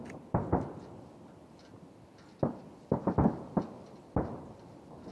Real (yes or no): yes